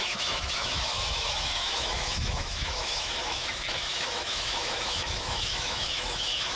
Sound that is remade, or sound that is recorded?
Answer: remade